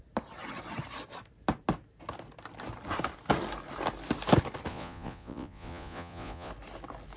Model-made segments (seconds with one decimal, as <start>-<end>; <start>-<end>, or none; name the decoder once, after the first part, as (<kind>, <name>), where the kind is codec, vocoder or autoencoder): 4.7-6.5 (vocoder, Vocos)